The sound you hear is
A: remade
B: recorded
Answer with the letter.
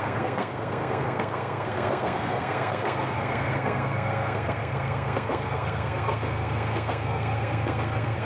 A